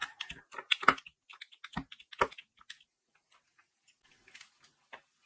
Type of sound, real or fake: real